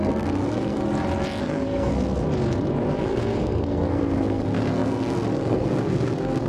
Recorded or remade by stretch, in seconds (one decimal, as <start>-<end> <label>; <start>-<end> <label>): 0.0-0.8 remade; 0.8-1.4 recorded; 1.4-1.9 remade; 1.9-3.0 recorded; 3.0-6.5 remade